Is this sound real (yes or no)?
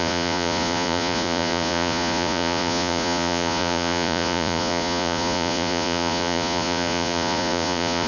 no